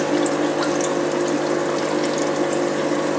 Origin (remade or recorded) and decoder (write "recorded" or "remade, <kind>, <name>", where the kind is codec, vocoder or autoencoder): recorded